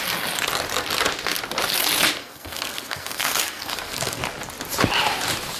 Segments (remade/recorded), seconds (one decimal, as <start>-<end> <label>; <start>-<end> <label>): 0.0-2.2 recorded; 2.2-4.2 remade; 4.2-5.6 recorded